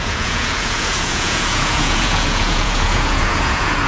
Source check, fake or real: fake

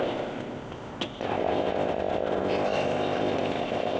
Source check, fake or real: fake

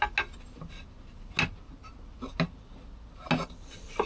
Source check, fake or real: real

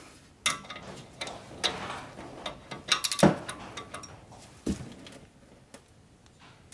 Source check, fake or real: real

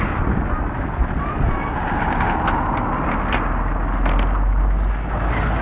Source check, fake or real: real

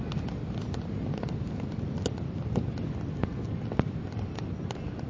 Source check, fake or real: real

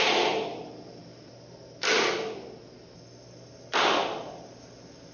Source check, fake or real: real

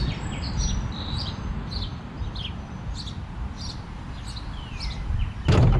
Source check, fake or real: real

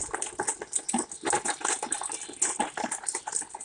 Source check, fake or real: real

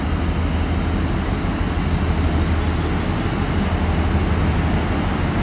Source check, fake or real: real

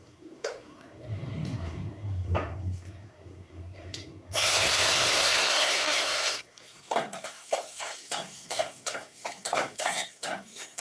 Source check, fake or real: fake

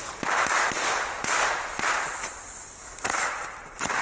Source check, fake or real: real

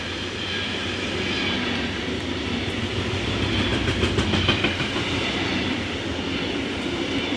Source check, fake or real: real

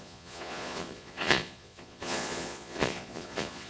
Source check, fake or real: fake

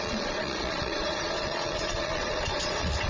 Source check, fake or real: fake